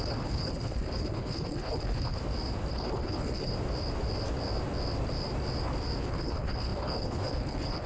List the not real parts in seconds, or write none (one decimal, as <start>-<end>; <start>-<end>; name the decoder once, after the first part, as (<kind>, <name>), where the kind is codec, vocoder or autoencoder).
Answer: 0.0-2.2 (codec, HILCodec); 2.7-3.5; 6.0-7.9